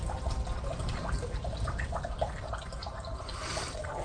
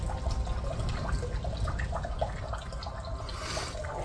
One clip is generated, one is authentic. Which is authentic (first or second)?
second